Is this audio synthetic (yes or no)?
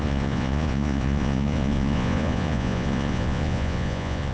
yes